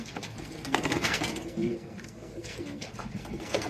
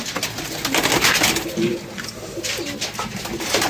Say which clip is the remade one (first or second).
first